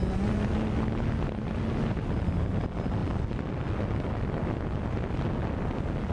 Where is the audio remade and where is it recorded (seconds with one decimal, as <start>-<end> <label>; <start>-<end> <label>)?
0.0-6.1 recorded